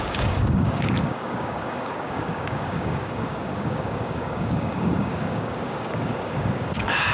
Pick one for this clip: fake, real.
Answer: fake